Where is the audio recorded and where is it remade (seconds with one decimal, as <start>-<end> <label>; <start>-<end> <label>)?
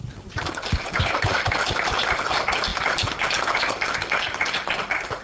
0.0-5.2 recorded